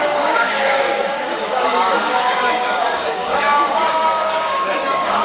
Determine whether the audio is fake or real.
fake